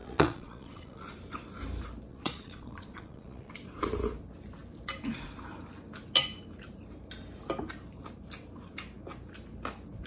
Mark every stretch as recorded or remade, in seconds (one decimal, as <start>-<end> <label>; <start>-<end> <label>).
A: 0.0-1.1 remade; 1.1-2.1 recorded; 2.1-3.5 remade; 3.5-10.1 recorded

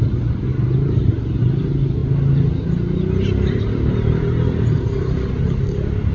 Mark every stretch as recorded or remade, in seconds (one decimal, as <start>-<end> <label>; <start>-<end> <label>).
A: 0.0-6.1 recorded

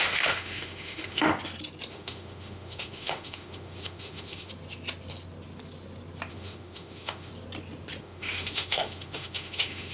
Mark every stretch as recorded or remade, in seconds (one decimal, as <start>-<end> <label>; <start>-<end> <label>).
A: 0.0-1.3 remade; 1.3-1.9 recorded; 1.9-4.5 remade; 4.5-6.3 recorded; 6.3-7.3 remade; 7.3-8.0 recorded; 8.0-9.9 remade

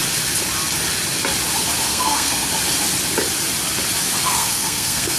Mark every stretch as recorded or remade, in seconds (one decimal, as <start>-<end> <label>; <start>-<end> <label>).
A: 0.0-1.9 recorded; 1.9-2.5 remade; 2.5-4.2 recorded; 4.2-5.2 remade

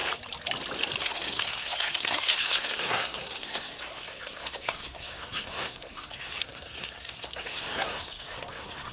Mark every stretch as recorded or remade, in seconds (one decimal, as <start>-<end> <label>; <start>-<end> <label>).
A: 0.0-1.0 recorded; 1.0-8.9 remade